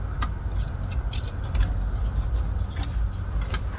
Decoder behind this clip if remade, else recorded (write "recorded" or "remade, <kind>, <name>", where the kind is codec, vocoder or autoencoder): recorded